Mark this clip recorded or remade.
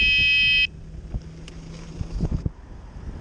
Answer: recorded